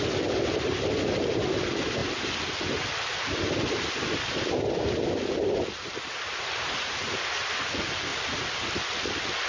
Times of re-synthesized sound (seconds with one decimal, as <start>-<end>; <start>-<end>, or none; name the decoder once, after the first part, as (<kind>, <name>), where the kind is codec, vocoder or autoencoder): none